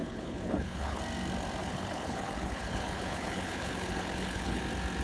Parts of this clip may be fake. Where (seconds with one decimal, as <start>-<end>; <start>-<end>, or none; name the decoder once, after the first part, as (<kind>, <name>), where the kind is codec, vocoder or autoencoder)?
0.0-1.0 (codec, HILCodec); 1.6-4.6

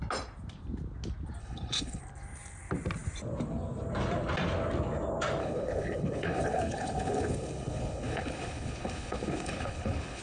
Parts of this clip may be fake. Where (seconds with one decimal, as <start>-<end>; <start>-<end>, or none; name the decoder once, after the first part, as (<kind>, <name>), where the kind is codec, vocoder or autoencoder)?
1.4-2.0 (codec, HILCodec); 5.4-10.2